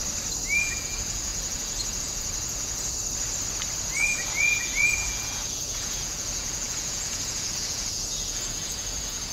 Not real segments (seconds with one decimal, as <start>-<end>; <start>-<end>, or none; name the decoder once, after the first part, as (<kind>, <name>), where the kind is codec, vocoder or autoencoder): 0.6-3.0 (vocoder, Vocos); 3.8-9.3